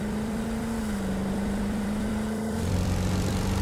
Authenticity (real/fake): fake